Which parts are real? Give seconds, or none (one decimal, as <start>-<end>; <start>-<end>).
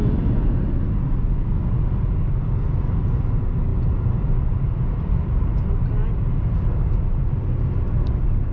0.0-8.5